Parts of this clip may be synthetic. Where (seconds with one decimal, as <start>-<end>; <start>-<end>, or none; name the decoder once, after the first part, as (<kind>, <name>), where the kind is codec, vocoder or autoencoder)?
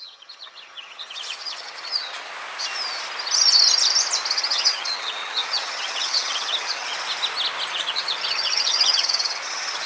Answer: 0.0-2.3 (vocoder, HiFi-GAN); 4.3-6.9; 7.7-9.9